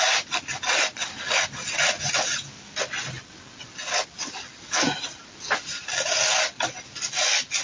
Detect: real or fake real